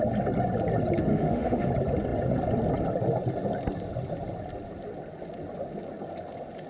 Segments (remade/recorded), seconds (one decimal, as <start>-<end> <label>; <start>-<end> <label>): 0.0-1.1 recorded; 1.1-1.7 remade; 1.7-6.7 recorded